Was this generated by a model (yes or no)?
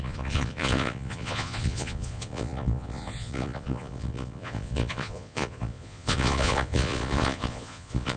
yes